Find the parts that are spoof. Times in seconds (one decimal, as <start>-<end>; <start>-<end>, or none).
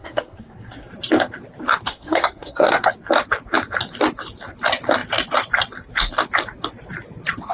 0.0-0.9; 1.9-2.9